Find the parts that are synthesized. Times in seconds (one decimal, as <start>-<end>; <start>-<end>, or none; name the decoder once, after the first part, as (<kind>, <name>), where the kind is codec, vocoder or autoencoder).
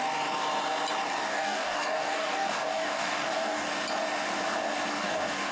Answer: 1.3-3.7 (codec, DAC); 4.9-5.5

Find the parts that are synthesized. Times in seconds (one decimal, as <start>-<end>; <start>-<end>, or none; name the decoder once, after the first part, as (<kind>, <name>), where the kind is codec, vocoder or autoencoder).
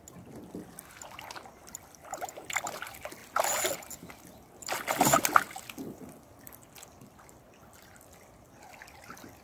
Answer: none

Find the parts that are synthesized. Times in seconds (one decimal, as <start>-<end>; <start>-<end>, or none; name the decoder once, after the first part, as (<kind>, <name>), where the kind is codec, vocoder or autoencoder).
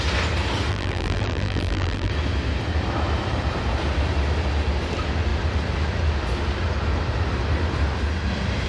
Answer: 0.7-2.1 (vocoder, BigVGAN v2)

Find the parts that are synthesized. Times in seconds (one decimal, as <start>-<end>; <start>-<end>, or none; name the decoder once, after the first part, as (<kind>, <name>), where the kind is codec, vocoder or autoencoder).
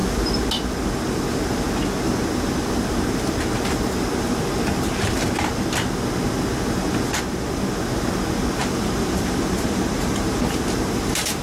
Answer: 8.6-11.4 (vocoder, BigVGAN v2)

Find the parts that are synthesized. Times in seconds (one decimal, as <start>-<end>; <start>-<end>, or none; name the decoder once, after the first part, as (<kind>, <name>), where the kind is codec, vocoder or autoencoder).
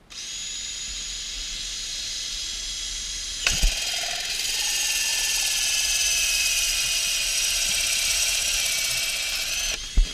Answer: 5.1-6.7 (vocoder, BigVGAN v2)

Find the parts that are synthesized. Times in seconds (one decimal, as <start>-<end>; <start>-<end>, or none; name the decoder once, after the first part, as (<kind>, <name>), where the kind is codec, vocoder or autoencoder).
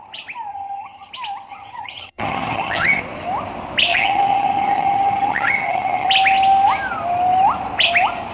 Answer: 0.5-1.1 (vocoder, HiFi-GAN); 1.5-3.0; 3.9-6.1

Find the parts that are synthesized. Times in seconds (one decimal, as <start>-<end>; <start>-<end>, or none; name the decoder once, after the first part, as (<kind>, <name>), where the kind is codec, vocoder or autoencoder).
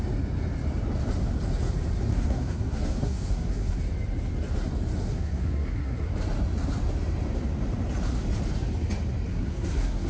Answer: 2.1-3.8 (codec, SNAC); 5.0-6.1; 9.3-10.1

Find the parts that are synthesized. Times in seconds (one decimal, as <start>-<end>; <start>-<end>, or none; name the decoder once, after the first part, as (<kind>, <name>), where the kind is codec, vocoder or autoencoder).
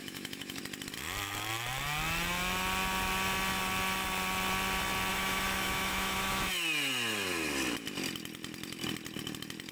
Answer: 0.0-0.6 (autoencoder, DAC-VAE); 5.1-6.5